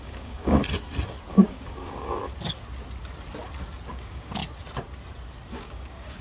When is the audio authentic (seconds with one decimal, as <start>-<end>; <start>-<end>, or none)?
0.6-1.3; 2.2-3.9; 4.4-5.5